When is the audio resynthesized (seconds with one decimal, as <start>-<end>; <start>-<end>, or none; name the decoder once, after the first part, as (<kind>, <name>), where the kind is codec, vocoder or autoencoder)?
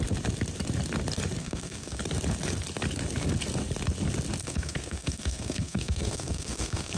1.4-2.0 (codec, SNAC); 4.4-7.0